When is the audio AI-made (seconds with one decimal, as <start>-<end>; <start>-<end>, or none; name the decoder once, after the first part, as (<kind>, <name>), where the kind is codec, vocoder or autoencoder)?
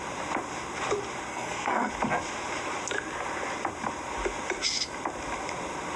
1.3-1.9 (codec, SNAC)